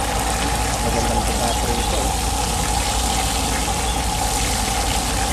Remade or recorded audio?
recorded